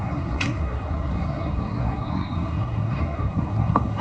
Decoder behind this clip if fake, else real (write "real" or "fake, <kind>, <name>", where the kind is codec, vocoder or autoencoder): fake, codec, SNAC